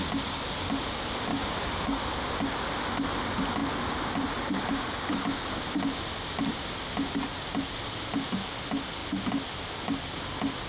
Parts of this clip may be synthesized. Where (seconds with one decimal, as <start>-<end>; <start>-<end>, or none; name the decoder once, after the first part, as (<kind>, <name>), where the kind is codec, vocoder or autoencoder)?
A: 1.3-2.0 (codec, DAC)